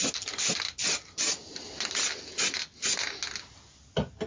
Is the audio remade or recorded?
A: recorded